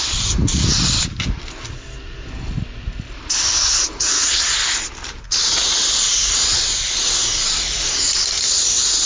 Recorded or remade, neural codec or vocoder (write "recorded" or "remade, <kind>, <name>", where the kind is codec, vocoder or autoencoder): recorded